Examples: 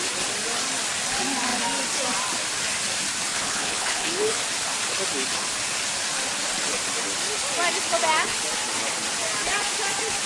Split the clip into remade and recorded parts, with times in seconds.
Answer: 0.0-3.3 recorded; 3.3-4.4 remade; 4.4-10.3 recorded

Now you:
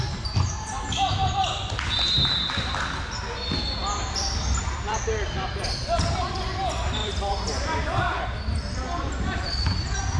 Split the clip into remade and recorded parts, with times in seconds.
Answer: 0.0-3.8 recorded; 3.8-6.6 remade; 6.6-7.0 recorded; 7.0-8.2 remade; 8.2-10.2 recorded